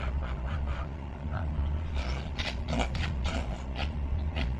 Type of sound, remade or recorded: remade